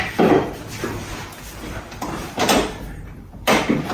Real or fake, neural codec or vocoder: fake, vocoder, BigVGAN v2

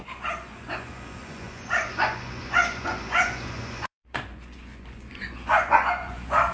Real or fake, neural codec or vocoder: fake, vocoder, Vocos